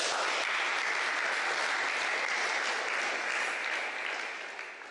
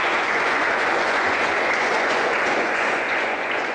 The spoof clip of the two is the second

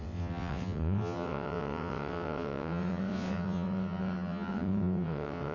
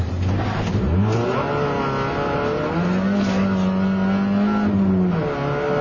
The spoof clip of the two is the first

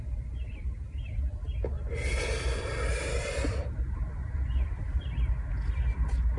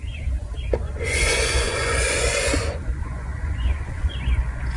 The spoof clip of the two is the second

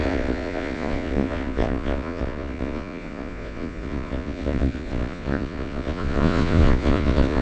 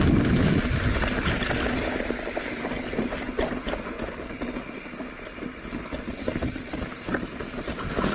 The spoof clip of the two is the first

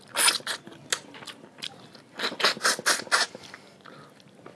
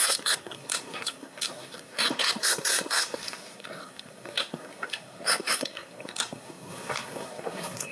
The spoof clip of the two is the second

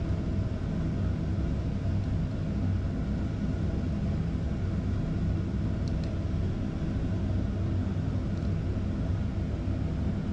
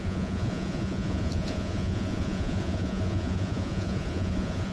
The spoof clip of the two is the second